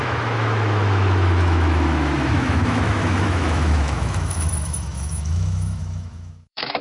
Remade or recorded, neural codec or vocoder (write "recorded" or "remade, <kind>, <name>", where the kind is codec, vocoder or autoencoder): remade, autoencoder, DAC-VAE